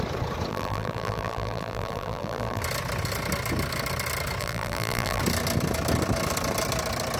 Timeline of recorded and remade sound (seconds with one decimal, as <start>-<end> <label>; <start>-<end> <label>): 0.0-0.5 recorded; 0.5-2.6 remade; 2.6-4.4 recorded; 4.4-5.2 remade; 5.2-7.2 recorded

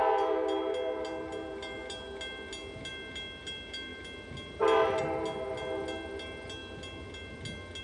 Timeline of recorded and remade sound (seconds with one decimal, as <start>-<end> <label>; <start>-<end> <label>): 0.0-7.8 recorded

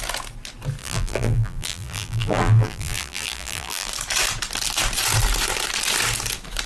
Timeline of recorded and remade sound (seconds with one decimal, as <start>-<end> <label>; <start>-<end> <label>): 0.0-0.8 recorded; 0.8-3.9 remade; 3.9-6.7 recorded

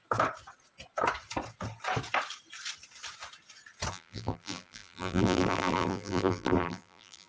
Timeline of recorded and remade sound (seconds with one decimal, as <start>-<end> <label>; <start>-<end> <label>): 0.0-3.9 recorded; 3.9-7.3 remade

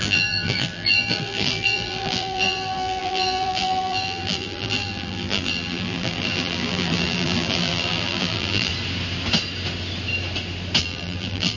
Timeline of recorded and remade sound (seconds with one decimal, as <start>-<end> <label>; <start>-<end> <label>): 0.0-8.7 remade; 8.7-10.8 recorded; 10.8-11.6 remade

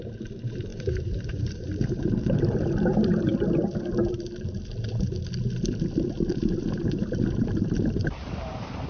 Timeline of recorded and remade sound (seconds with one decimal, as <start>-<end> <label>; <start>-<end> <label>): 0.0-3.3 remade; 3.3-6.3 recorded; 6.3-8.9 remade

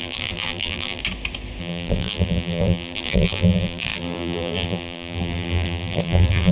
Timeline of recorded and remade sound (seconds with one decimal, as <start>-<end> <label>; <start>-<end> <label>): 0.0-1.0 remade; 1.0-1.6 recorded; 1.6-6.5 remade